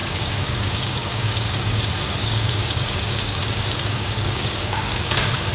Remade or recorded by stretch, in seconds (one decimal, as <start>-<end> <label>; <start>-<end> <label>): 0.0-1.8 remade; 1.8-2.2 recorded; 2.2-5.5 remade